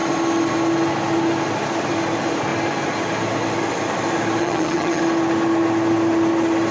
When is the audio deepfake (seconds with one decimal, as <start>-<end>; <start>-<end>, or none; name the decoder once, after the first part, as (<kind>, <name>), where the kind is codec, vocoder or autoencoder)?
4.4-5.0 (vocoder, HiFi-GAN)